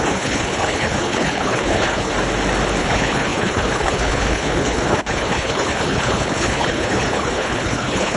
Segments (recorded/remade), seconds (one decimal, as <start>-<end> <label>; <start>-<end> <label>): 0.0-2.1 remade; 2.1-2.8 recorded; 2.8-8.2 remade